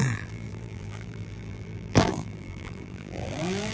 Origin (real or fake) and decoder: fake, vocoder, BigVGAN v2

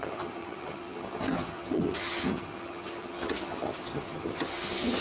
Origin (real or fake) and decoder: fake, vocoder, HiFi-GAN